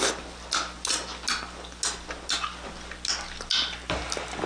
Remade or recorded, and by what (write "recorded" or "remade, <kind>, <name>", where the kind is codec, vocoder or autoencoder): recorded